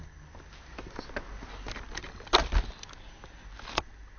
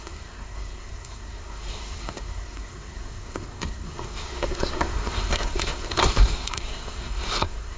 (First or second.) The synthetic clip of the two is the second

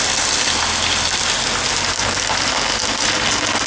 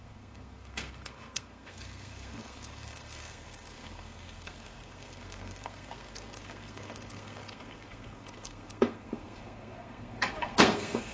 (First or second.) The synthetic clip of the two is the second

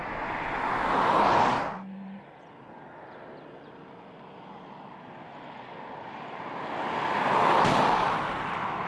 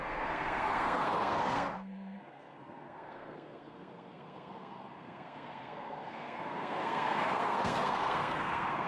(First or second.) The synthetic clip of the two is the second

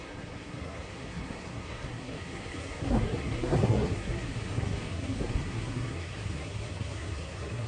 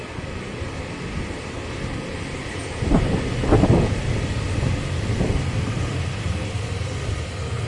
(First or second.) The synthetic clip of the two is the first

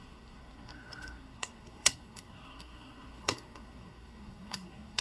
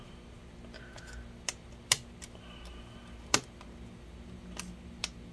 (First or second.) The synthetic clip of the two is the first